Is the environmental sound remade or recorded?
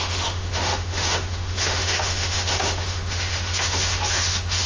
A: remade